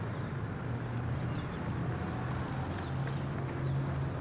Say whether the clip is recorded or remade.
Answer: recorded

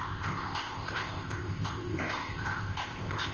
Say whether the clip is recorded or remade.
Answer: remade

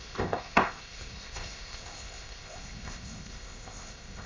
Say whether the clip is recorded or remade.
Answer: remade